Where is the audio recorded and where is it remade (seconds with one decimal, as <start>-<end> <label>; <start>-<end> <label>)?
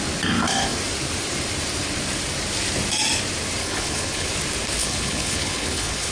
0.0-3.6 recorded; 3.6-4.3 remade; 4.3-4.8 recorded; 4.8-6.1 remade